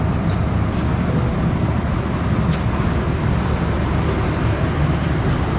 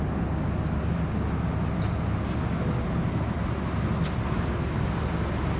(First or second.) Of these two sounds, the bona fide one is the second